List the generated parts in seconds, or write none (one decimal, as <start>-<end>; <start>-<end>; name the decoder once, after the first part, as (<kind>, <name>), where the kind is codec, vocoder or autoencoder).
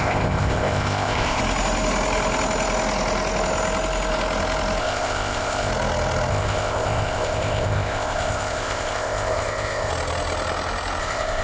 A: 0.0-1.4 (codec, ZipCodec); 4.8-5.7; 6.3-9.9; 11.0-11.4